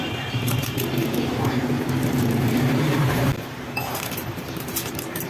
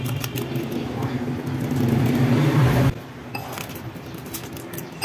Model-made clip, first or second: first